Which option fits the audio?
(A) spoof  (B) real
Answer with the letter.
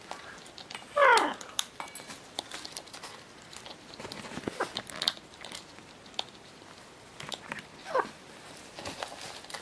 B